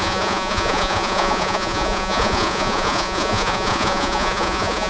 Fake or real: fake